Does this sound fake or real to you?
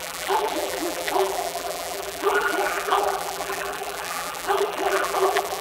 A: fake